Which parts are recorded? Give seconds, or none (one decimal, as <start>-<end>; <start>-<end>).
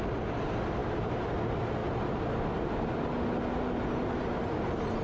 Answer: 0.0-5.0